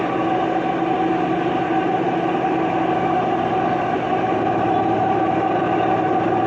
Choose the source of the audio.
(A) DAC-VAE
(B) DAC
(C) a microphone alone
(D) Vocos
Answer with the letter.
C